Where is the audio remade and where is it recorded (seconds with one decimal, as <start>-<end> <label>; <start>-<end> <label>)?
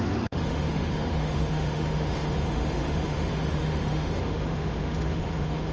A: 0.0-5.7 remade